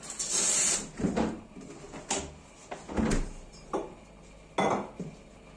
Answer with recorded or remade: recorded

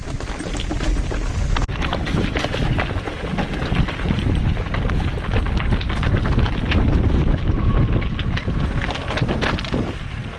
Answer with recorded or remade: recorded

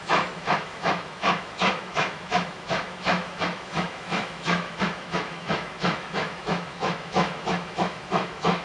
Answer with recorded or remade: remade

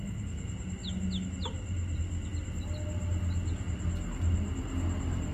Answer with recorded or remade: recorded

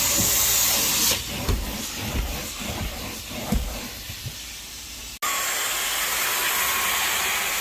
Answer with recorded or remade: recorded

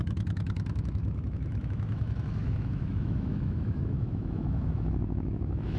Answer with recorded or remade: remade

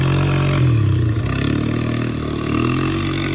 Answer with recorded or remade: recorded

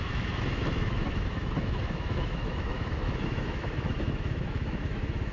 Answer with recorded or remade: remade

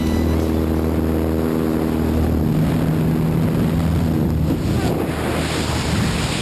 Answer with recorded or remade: recorded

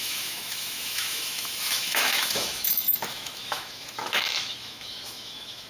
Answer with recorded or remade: remade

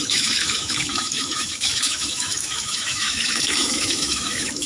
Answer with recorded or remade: remade